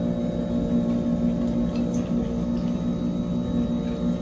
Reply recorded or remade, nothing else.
recorded